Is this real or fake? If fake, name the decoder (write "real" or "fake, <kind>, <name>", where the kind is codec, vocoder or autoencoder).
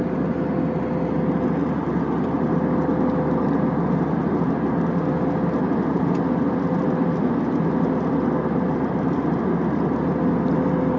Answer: real